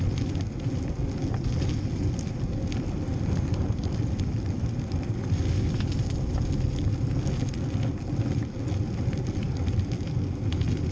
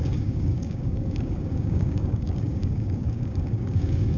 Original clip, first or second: first